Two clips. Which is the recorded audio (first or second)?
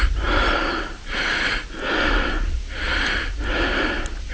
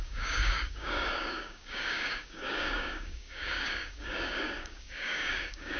first